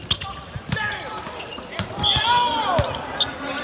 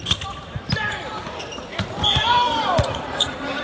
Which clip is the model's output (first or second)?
second